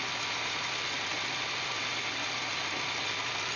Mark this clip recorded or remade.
recorded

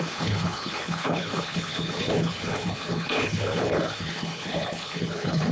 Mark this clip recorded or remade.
remade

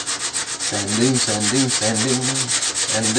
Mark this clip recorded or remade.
recorded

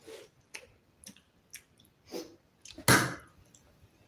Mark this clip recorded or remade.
recorded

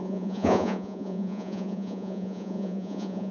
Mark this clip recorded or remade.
remade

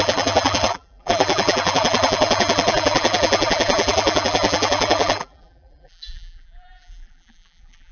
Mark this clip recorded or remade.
remade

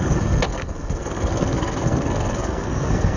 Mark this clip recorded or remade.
remade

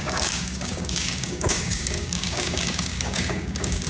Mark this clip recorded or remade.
remade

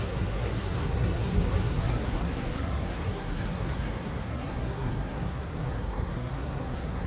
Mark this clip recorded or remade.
remade